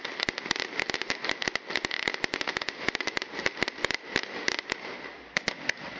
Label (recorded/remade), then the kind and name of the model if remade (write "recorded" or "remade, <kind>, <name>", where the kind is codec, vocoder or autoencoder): recorded